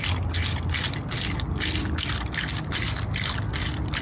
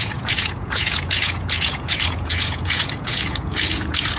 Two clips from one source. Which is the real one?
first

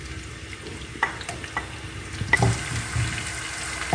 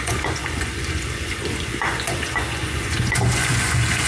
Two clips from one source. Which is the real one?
first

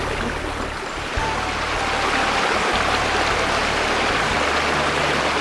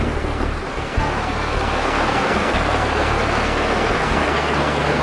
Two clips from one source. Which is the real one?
first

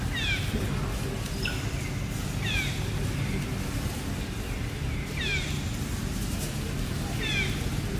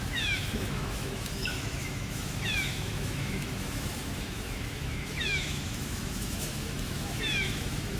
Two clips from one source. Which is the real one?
first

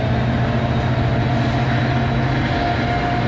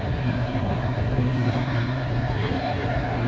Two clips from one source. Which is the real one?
first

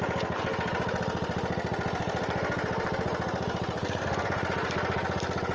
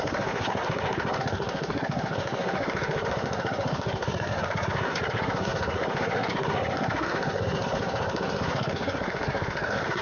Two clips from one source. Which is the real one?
first